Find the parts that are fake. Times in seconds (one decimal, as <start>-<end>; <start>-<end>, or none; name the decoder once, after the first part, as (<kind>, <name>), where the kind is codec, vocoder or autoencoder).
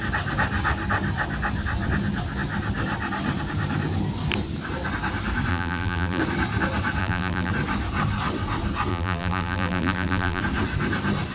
5.5-6.2 (vocoder, BigVGAN v2); 7.0-7.5; 8.9-10.4